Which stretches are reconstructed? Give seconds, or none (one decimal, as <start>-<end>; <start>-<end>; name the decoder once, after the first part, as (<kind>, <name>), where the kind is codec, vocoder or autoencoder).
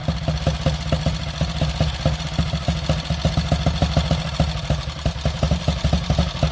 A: none